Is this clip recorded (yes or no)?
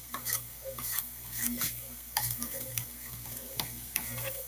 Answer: no